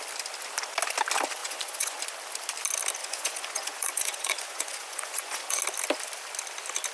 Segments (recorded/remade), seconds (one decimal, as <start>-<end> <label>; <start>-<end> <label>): 0.0-1.4 recorded; 1.4-2.0 remade; 2.0-3.0 recorded; 3.0-5.6 remade; 5.6-6.9 recorded